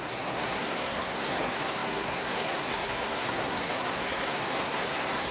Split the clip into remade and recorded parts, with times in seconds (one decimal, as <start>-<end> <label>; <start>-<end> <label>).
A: 0.0-5.3 remade